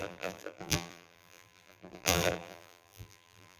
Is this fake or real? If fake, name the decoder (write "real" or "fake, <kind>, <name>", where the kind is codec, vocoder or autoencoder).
fake, vocoder, BigVGAN v2